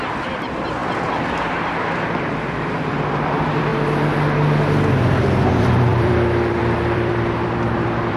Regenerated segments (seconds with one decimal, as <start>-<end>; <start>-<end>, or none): 0.0-0.8; 1.6-3.7; 5.2-8.2